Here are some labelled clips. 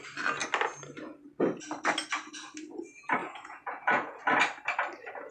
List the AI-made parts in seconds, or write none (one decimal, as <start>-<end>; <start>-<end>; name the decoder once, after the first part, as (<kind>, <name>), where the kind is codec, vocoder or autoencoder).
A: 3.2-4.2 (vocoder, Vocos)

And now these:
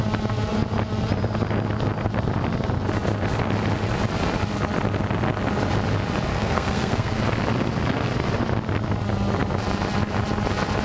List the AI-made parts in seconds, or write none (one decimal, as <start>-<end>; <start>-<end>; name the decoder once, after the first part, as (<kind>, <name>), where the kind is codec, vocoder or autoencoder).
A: 6.3-7.2 (codec, SNAC)

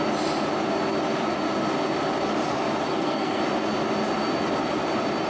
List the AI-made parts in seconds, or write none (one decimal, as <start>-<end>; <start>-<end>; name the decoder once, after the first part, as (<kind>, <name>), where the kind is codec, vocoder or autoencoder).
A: 2.9-3.4 (codec, SNAC)

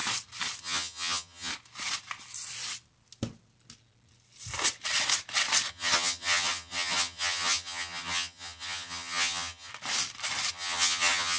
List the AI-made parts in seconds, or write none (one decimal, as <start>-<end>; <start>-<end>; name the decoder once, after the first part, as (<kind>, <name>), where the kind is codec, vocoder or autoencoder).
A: 0.6-1.5 (vocoder, HiFi-GAN); 5.7-9.7; 10.5-11.4

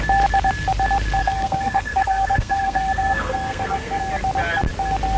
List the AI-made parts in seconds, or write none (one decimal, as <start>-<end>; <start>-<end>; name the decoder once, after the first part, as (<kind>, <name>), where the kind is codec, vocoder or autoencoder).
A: 1.2-4.0 (codec, SNAC)